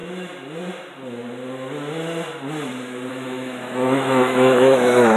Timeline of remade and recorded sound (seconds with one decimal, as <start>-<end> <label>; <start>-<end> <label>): 0.0-3.1 recorded; 3.1-5.2 remade